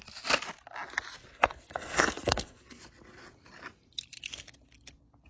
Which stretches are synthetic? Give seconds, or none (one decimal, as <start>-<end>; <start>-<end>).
1.3-2.8